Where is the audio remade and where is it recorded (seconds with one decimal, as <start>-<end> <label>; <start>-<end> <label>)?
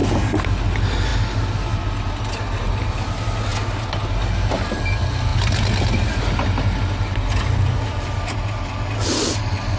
0.0-1.1 recorded; 1.1-1.8 remade; 1.8-9.8 recorded